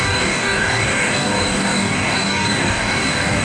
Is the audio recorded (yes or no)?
no